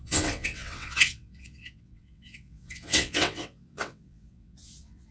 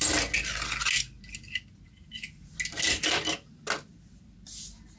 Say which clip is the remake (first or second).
first